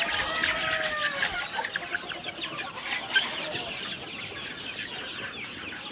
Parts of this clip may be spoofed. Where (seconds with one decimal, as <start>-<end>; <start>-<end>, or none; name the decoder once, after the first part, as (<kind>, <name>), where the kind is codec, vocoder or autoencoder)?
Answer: none